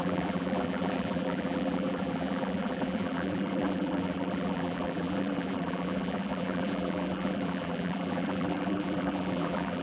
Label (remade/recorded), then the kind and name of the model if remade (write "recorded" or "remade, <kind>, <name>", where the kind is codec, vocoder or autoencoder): remade, vocoder, BigVGAN v2